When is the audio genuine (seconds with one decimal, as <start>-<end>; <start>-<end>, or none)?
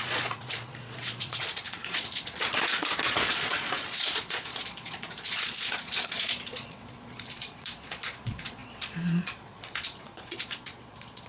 none